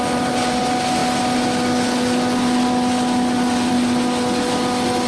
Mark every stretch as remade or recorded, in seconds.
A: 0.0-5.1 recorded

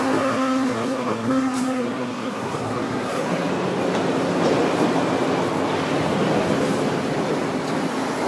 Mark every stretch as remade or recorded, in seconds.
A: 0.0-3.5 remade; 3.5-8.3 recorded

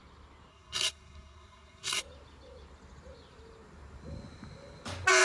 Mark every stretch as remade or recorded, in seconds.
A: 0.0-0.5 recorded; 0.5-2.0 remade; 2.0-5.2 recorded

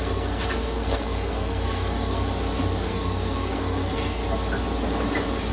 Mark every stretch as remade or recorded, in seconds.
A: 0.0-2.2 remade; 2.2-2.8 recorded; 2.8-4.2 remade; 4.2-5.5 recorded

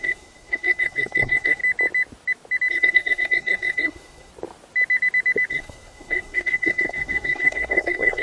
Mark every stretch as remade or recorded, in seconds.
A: 0.0-1.6 remade; 1.6-2.7 recorded; 2.7-4.3 remade; 4.3-5.5 recorded; 5.5-8.2 remade